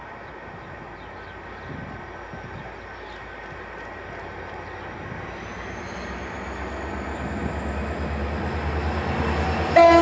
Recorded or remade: recorded